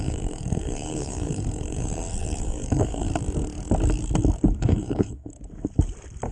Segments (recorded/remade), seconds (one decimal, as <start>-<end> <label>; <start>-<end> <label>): 0.0-3.1 remade; 3.1-4.6 recorded; 4.6-5.3 remade; 5.3-6.3 recorded